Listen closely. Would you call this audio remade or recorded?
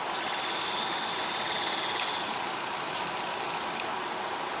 recorded